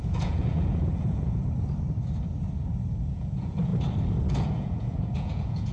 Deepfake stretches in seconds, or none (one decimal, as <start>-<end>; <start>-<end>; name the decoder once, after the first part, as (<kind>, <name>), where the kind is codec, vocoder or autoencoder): 0.0-1.4 (vocoder, Vocos); 3.1-3.7; 4.3-5.7